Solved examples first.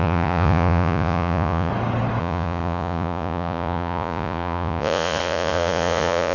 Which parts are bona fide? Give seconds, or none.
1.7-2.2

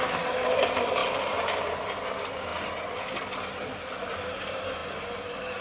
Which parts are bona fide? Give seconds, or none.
0.0-5.6

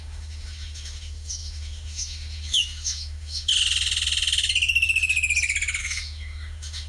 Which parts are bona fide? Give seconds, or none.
3.5-5.8